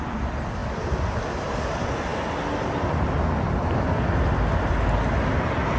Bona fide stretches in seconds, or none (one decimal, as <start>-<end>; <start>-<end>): 0.0-5.8